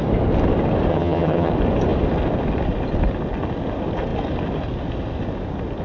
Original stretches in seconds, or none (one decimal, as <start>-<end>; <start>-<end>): 0.0-0.9; 1.5-5.8